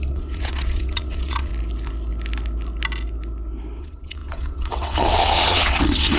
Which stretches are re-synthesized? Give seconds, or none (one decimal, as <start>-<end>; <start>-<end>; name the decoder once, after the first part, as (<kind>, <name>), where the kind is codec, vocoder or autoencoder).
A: 0.0-1.5 (vocoder, WaveNeXt); 3.8-6.2